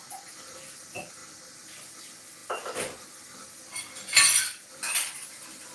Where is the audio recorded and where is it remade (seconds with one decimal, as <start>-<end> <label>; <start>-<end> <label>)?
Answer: 0.0-5.7 recorded

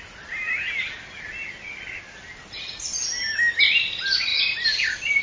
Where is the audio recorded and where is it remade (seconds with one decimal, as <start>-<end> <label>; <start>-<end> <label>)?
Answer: 0.0-4.3 recorded; 4.3-5.2 remade

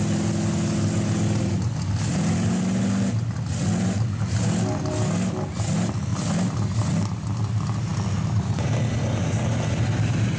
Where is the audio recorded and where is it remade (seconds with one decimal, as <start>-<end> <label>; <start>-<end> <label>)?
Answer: 0.0-10.4 recorded

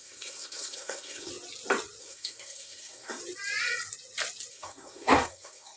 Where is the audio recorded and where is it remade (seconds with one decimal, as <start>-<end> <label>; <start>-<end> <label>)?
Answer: 0.0-1.3 remade; 1.3-2.0 recorded; 2.0-3.2 remade; 3.2-4.5 recorded; 4.5-5.8 remade

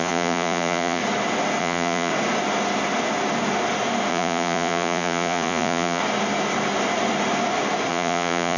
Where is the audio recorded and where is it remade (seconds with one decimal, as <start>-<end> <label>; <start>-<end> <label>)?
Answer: 0.0-1.0 remade; 1.0-1.6 recorded; 1.6-2.1 remade; 2.1-4.1 recorded; 4.1-6.0 remade; 6.0-7.9 recorded; 7.9-8.6 remade

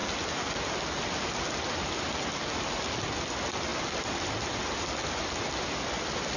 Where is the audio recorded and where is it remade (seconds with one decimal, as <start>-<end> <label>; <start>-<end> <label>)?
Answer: 0.0-6.4 recorded